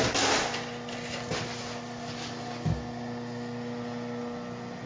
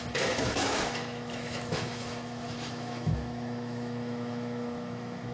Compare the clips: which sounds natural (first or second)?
first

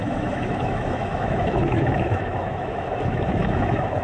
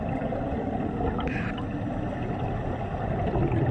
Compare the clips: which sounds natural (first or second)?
second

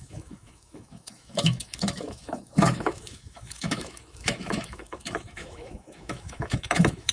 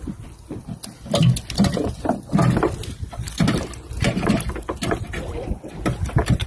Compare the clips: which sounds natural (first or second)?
second